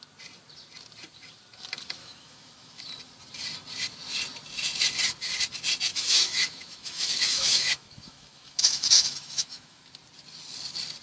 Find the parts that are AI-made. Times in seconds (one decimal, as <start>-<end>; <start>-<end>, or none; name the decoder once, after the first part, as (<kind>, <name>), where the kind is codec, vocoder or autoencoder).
2.0-2.8 (autoencoder, DAC-VAE); 5.9-9.8